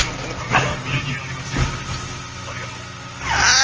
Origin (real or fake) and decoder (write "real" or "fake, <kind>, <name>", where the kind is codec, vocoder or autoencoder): real